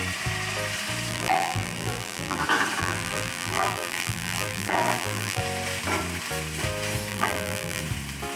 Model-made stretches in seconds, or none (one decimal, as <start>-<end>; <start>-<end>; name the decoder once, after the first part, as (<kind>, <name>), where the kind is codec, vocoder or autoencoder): 1.1-2.4 (vocoder, BigVGAN v2); 2.8-5.4; 7.1-7.8